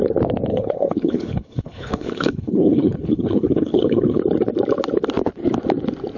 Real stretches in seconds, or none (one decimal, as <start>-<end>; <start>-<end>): 0.0-0.5; 4.2-6.2